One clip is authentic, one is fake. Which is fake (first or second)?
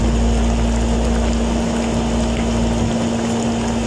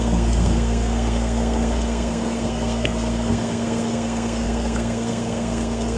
second